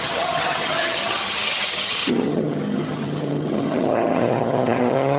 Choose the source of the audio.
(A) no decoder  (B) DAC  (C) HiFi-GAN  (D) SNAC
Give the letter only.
C